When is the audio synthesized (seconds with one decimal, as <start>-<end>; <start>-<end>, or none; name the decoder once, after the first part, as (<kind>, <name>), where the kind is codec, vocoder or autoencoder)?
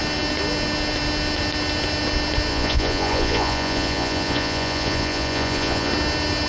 2.5-5.9 (vocoder, Vocos)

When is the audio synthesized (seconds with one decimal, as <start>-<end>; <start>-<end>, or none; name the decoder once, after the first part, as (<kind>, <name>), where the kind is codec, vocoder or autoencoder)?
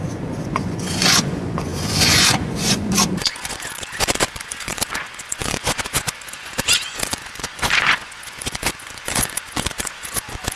0.0-10.6 (vocoder, Vocos)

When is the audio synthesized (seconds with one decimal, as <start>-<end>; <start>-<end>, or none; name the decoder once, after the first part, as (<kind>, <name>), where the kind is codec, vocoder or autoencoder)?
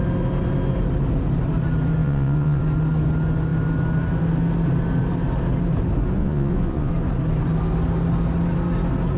2.0-2.6 (vocoder, Vocos); 6.2-6.9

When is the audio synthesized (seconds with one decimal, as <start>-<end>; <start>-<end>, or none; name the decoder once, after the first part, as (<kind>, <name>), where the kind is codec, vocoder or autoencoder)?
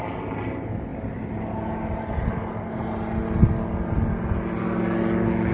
none